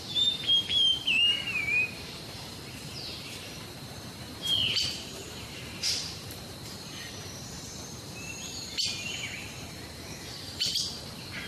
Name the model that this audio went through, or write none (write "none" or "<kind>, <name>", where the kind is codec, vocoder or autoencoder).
vocoder, BigVGAN v2